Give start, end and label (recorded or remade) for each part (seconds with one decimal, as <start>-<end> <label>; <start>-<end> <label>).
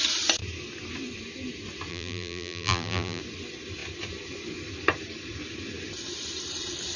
0.0-1.9 recorded; 1.9-3.2 remade; 3.2-7.0 recorded